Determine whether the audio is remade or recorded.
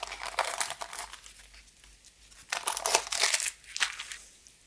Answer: recorded